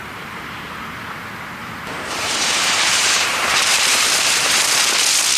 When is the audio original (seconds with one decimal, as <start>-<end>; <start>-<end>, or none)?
0.6-1.6; 4.8-5.4